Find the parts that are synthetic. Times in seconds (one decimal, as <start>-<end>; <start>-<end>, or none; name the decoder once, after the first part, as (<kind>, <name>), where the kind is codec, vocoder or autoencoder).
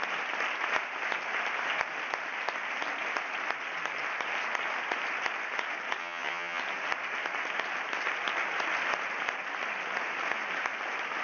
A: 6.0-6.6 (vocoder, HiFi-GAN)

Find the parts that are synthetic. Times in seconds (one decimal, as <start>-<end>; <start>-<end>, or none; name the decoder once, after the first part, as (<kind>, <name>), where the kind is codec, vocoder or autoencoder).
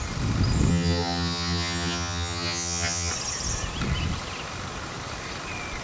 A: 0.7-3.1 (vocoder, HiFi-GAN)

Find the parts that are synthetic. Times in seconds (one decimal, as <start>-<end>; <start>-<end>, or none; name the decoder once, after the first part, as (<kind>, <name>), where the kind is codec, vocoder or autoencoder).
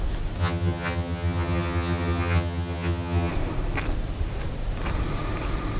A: 0.4-3.3 (vocoder, HiFi-GAN)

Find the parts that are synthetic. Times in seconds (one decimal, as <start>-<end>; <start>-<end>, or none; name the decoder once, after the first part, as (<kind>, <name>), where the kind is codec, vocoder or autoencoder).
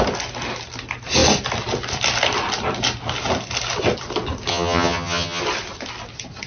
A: 4.5-5.4 (vocoder, HiFi-GAN)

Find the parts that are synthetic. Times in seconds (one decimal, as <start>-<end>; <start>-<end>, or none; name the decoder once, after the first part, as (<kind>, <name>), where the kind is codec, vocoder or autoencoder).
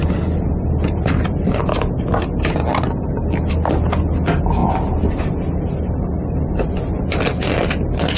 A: none